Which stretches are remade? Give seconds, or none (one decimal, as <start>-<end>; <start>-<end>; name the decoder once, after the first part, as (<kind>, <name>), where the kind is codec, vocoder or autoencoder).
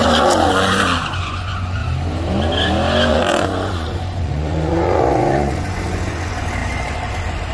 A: 0.0-1.8 (vocoder, Vocos); 3.1-7.5